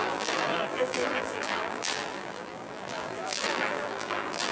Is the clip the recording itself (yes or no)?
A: no